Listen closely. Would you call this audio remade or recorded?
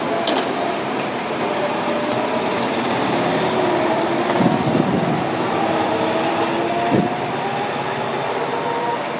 recorded